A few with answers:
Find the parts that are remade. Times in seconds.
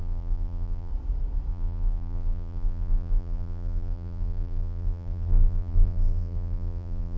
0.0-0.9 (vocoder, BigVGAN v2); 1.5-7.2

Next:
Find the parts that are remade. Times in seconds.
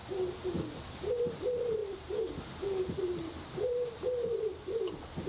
1.3-5.3 (vocoder, BigVGAN v2)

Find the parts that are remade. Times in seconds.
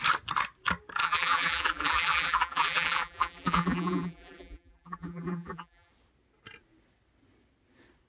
1.0-5.9 (vocoder, BigVGAN v2)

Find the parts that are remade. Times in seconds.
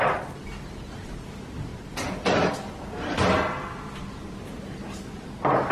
none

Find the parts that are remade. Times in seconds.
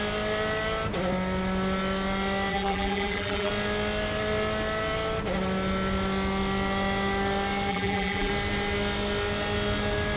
2.5-3.5 (vocoder, BigVGAN v2); 7.7-8.3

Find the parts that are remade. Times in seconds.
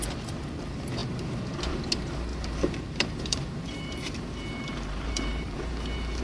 2.3-6.2 (vocoder, BigVGAN v2)